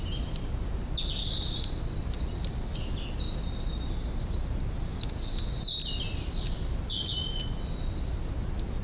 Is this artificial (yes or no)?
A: no